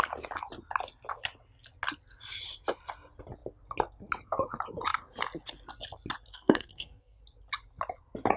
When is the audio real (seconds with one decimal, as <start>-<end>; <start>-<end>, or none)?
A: 0.0-6.3; 7.2-8.4

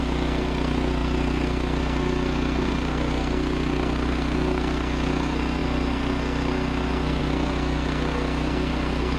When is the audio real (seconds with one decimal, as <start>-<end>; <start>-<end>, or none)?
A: none

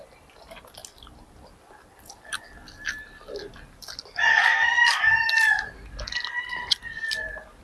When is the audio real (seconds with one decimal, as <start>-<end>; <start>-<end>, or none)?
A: 0.0-4.3; 5.0-7.6

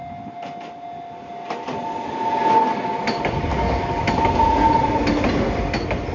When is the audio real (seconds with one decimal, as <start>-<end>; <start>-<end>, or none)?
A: 0.0-3.5; 4.0-6.1

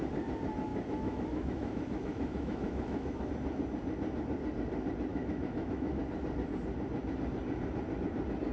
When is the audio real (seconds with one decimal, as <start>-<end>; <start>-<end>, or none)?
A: 0.0-0.7; 3.3-5.1; 6.0-8.5

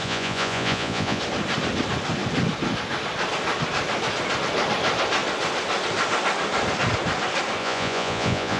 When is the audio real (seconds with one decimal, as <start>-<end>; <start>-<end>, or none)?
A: 1.2-7.6

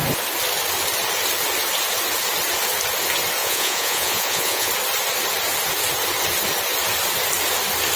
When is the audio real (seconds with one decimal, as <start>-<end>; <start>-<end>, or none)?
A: 0.0-3.4; 4.7-8.0